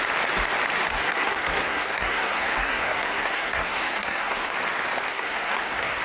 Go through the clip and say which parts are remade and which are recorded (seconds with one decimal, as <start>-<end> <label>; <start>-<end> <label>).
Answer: 0.0-0.9 recorded; 0.9-4.5 remade; 4.5-5.1 recorded; 5.1-6.0 remade